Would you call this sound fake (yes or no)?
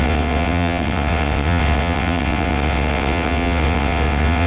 yes